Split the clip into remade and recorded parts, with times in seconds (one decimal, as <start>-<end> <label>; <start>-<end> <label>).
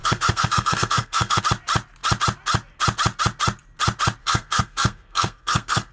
0.0-1.4 remade; 1.4-4.2 recorded; 4.2-5.9 remade